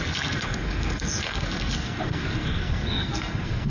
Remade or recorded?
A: remade